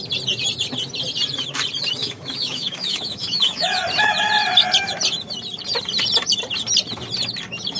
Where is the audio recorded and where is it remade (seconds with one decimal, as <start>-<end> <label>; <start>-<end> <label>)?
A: 0.0-2.0 recorded; 2.0-3.8 remade; 3.8-7.8 recorded